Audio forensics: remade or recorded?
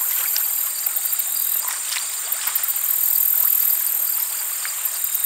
recorded